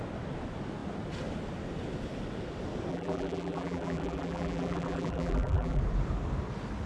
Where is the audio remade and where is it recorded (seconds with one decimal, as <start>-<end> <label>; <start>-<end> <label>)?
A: 0.0-2.9 recorded; 2.9-5.8 remade; 5.8-6.9 recorded